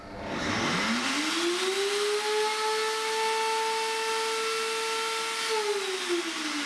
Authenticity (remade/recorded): recorded